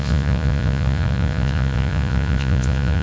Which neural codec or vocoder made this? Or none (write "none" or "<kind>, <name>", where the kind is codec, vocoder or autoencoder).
vocoder, Vocos